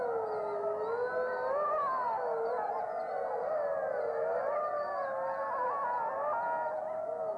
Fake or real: real